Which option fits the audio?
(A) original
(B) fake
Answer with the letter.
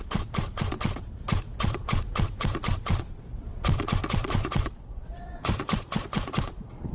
B